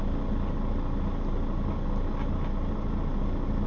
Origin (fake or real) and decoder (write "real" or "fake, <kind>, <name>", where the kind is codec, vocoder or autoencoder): real